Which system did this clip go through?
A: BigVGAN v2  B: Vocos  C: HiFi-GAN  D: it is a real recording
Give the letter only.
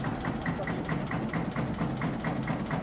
D